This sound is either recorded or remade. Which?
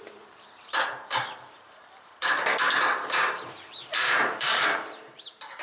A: remade